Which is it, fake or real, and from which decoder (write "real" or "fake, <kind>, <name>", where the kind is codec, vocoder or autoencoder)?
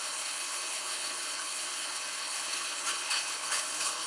fake, codec, HILCodec